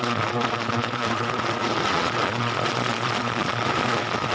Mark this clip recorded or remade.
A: remade